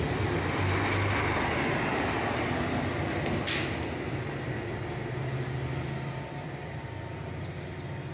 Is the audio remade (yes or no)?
no